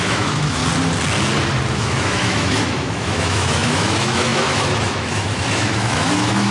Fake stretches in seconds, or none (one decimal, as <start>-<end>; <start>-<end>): 0.0-0.6; 1.7-6.5